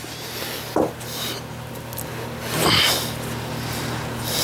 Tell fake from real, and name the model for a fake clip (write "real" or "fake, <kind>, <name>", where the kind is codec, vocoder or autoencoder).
real